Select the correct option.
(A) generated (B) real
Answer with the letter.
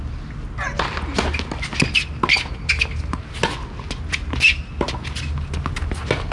B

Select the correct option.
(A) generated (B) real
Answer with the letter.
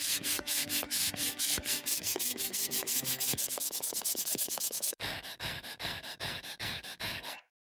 A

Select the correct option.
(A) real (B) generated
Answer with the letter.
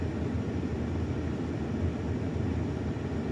A